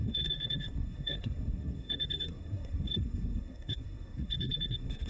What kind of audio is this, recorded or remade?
remade